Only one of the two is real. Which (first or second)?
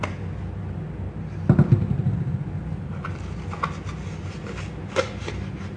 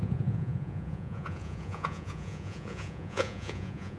first